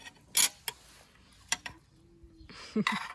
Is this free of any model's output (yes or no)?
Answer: yes